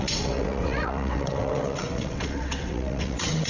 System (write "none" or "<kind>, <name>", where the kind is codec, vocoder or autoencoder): vocoder, WaveNeXt